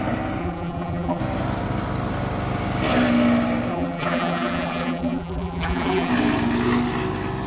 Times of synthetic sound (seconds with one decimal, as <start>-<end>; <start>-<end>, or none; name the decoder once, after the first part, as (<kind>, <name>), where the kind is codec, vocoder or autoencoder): 0.4-1.2 (vocoder, BigVGAN v2); 3.7-6.1